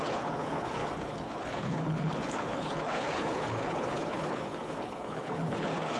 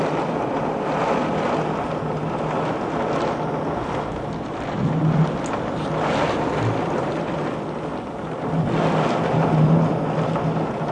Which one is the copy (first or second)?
first